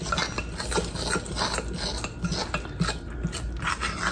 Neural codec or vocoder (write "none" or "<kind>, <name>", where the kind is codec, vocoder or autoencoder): none